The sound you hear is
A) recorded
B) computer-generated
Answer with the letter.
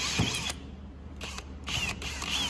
B